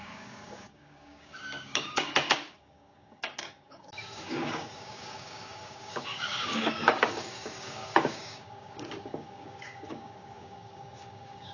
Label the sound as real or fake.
fake